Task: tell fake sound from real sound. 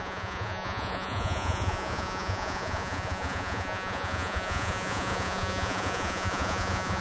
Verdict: fake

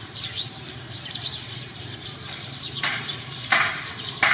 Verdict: fake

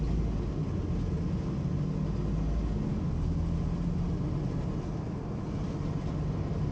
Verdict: real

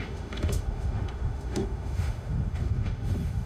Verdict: fake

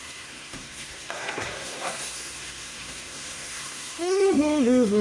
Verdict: fake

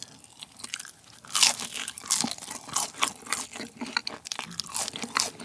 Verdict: real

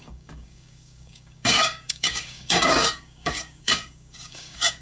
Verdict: fake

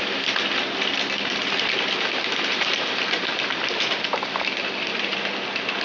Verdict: real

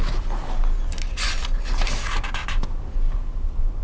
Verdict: real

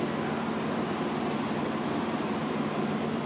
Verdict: real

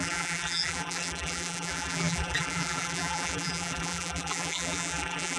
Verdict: fake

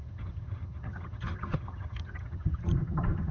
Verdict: fake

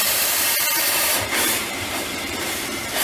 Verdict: fake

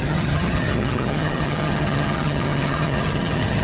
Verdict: fake